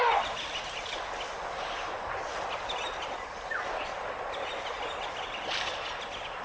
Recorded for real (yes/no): yes